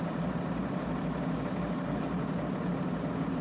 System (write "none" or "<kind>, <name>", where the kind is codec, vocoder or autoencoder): none